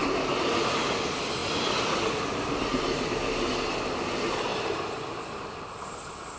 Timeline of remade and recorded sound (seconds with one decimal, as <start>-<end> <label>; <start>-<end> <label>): 0.0-6.4 recorded